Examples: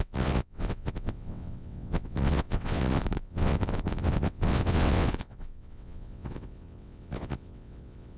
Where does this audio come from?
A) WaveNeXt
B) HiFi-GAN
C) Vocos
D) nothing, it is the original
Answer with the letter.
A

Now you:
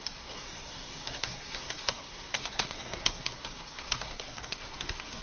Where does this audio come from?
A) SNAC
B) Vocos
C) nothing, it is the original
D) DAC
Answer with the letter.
A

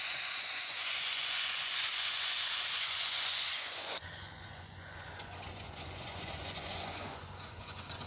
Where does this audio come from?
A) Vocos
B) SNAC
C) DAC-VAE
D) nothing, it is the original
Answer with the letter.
A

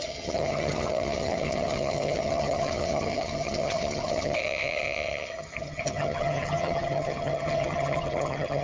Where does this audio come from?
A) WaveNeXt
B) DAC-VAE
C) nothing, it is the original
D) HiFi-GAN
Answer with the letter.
D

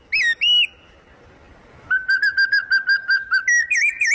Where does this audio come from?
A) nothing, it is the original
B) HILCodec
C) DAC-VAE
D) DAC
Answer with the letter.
A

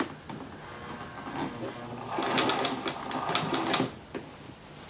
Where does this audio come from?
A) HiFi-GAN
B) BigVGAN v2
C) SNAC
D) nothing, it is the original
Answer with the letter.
D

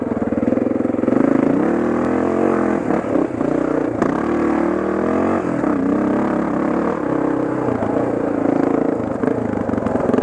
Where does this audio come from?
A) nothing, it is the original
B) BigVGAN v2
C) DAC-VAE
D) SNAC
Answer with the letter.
A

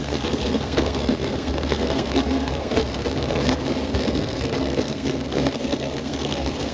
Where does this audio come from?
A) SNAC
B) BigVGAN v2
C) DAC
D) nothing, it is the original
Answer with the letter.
A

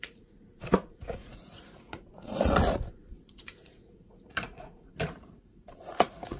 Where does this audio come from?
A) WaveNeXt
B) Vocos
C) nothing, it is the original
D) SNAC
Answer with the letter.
B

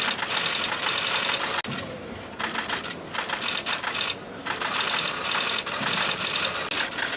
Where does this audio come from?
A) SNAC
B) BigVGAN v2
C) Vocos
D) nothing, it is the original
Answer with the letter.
D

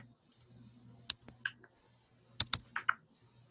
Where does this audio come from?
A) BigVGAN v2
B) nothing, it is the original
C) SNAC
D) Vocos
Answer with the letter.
B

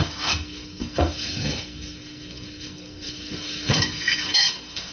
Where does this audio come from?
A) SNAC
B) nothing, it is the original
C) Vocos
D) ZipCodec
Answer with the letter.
A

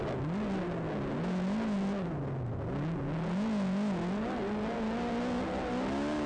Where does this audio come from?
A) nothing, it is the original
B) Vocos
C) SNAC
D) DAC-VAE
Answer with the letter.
A